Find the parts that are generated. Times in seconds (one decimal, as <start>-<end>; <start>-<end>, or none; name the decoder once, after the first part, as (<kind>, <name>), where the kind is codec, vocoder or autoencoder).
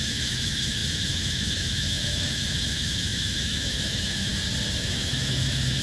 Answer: 0.0-4.3 (autoencoder, DAC-VAE); 4.8-5.8